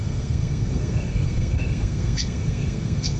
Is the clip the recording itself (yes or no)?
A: no